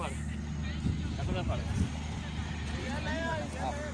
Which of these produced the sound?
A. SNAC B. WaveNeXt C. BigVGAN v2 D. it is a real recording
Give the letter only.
D